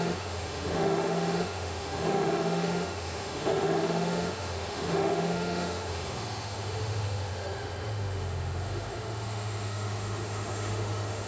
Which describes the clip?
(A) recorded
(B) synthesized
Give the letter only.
B